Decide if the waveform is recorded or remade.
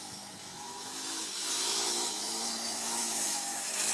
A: remade